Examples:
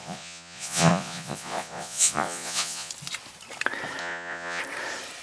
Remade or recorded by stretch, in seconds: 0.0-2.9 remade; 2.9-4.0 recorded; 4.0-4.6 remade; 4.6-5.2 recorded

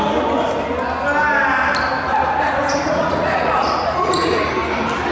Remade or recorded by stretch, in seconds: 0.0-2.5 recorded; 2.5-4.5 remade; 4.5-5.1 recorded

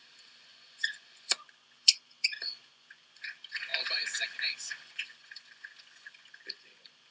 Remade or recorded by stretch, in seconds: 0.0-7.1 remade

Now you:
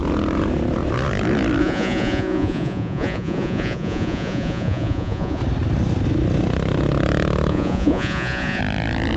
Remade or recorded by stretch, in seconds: 0.0-1.6 recorded; 1.6-5.4 remade; 5.4-7.5 recorded; 7.5-8.6 remade; 8.6-9.2 recorded

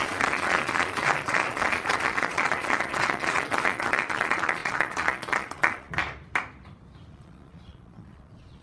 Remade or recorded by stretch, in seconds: 0.0-6.0 remade; 6.0-7.1 recorded; 7.1-8.6 remade